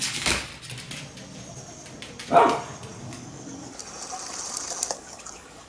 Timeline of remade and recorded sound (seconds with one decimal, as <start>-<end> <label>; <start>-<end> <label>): 0.0-0.5 remade; 0.5-3.0 recorded; 3.0-3.8 remade; 3.8-4.9 recorded; 4.9-5.7 remade